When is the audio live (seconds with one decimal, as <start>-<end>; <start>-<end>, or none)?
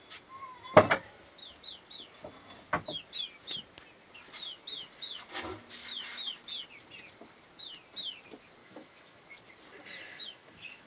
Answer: 0.0-8.6; 9.2-10.1